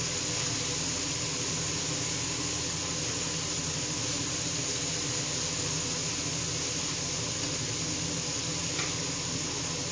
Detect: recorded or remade recorded